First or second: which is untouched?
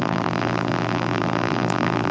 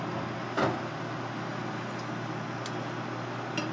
second